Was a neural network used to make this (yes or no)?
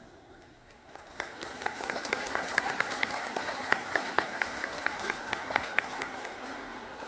yes